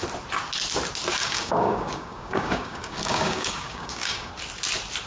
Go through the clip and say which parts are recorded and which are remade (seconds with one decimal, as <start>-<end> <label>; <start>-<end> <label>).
0.0-1.2 recorded; 1.2-4.3 remade; 4.3-5.1 recorded